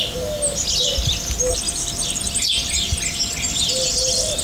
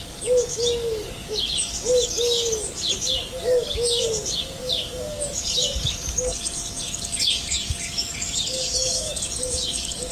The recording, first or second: first